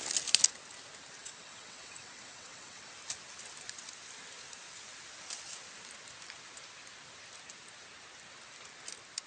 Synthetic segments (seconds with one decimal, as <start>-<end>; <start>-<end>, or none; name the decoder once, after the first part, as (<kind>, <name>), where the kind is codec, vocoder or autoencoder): 1.2-2.9 (vocoder, WaveNeXt)